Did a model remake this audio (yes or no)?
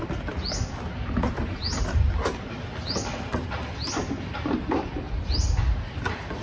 no